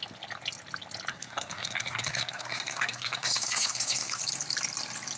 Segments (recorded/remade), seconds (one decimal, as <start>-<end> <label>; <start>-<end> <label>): 0.0-1.1 recorded; 1.1-4.2 remade; 4.2-5.2 recorded